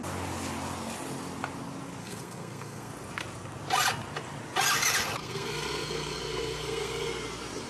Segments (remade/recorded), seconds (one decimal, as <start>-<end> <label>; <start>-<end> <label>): 0.0-2.0 recorded; 2.0-2.9 remade; 2.9-5.2 recorded; 5.2-7.1 remade; 7.1-7.7 recorded